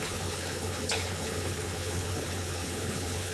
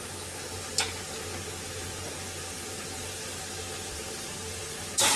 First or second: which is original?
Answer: second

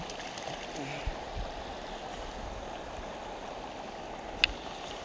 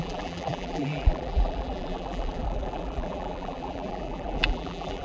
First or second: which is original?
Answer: first